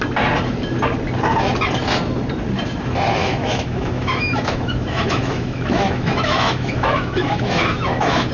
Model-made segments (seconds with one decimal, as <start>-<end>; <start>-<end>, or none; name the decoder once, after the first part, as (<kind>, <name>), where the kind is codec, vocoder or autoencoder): 3.2-8.3 (autoencoder, DAC-VAE)